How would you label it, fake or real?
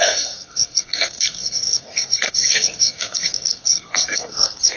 fake